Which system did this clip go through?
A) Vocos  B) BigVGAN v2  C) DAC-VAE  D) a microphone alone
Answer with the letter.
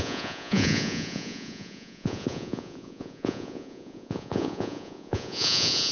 A